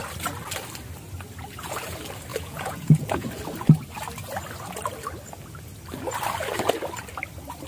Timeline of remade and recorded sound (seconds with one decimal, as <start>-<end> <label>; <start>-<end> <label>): 0.0-2.3 recorded; 2.3-3.3 remade; 3.3-7.7 recorded